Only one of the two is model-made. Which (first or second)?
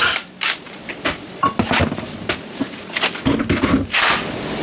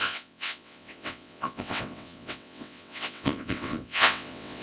second